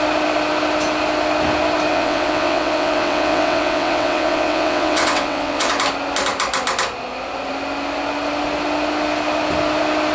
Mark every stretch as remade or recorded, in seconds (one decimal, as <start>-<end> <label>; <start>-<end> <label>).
0.0-1.9 recorded; 1.9-5.7 remade; 5.7-10.1 recorded